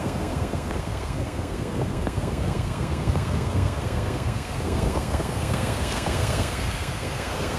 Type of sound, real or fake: fake